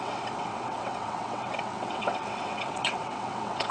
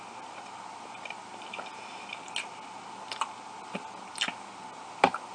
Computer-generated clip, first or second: first